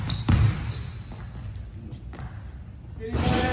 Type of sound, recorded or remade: recorded